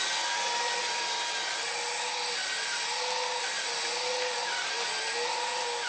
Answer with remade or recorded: recorded